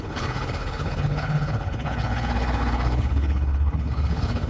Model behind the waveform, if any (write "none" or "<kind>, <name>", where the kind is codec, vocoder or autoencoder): codec, HILCodec